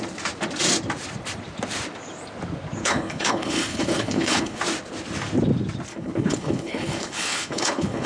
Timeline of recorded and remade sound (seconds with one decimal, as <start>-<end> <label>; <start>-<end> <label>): 0.0-2.8 recorded; 2.8-4.6 remade; 4.6-5.9 recorded; 5.9-8.1 remade